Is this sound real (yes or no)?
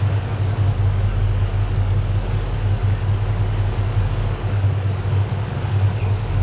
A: no